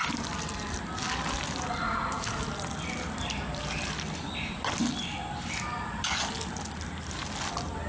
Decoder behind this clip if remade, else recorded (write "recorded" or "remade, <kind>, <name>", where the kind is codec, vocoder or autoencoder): recorded